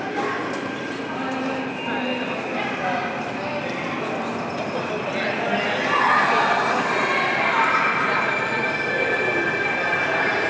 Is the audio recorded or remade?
recorded